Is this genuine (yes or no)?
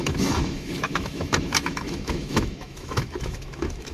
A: no